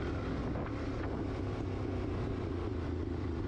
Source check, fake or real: real